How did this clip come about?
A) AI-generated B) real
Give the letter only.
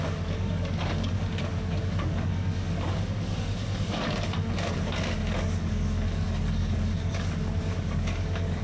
A